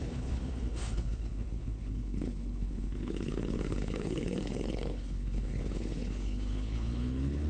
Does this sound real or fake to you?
fake